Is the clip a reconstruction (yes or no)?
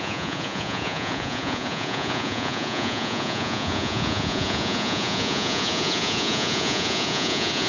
yes